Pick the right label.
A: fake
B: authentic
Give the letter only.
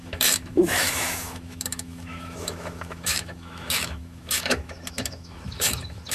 A